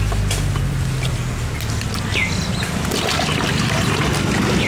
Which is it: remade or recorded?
recorded